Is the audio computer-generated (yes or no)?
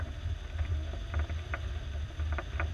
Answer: no